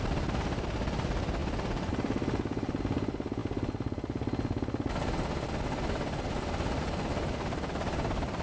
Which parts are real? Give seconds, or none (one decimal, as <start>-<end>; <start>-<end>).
0.0-8.4